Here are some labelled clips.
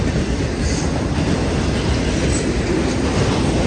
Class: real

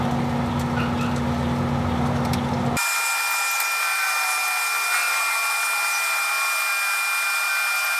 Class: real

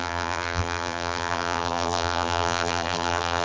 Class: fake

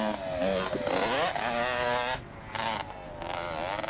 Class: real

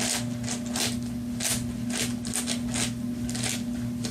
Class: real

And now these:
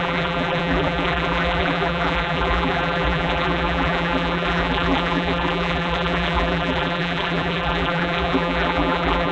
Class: fake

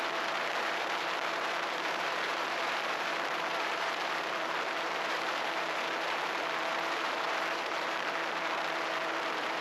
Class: fake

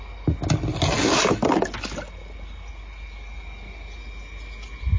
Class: real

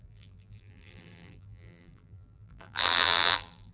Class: fake